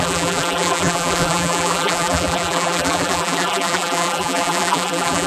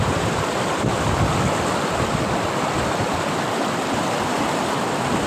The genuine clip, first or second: second